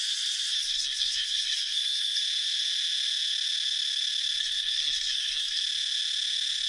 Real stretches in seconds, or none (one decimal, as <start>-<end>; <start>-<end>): 0.0-0.6; 2.2-4.4; 5.6-6.7